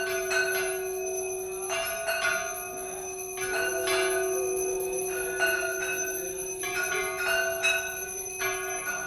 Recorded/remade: recorded